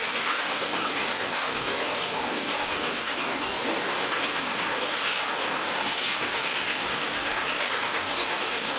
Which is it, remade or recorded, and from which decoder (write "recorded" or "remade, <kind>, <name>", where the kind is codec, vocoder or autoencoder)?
remade, codec, DAC